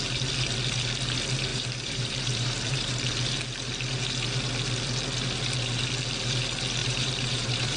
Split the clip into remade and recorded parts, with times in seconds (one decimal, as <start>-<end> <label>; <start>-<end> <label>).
0.0-1.5 recorded; 1.5-3.0 remade; 3.0-6.8 recorded; 6.8-7.8 remade